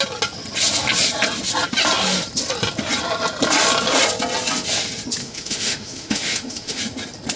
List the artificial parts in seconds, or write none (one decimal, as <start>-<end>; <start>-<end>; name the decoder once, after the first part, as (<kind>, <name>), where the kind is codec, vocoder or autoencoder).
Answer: 5.2-6.8 (autoencoder, DAC-VAE)